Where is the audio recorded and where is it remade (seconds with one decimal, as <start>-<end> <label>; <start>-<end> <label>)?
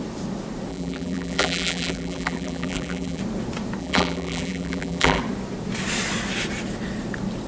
0.0-0.7 recorded; 0.7-3.2 remade; 3.2-3.8 recorded; 3.8-5.2 remade; 5.2-7.5 recorded